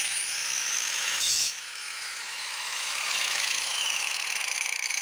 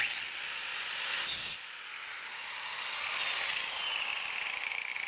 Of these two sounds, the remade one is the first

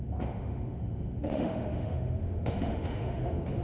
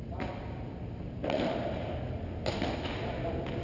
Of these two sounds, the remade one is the first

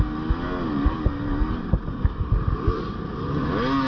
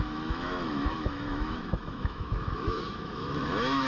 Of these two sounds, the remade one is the second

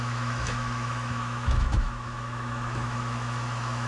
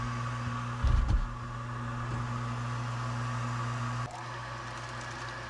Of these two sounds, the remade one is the first